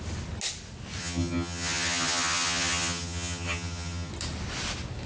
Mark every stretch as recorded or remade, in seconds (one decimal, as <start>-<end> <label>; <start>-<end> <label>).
0.0-1.0 recorded; 1.0-4.1 remade; 4.1-5.1 recorded